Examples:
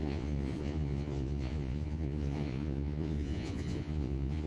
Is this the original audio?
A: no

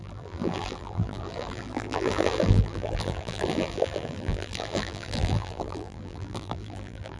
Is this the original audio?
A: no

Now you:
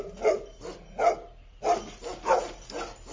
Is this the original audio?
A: yes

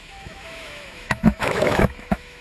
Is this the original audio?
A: no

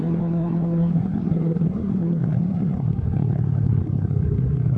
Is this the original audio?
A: no